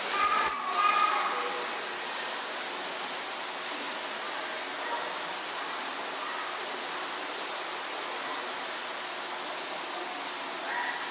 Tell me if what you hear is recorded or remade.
recorded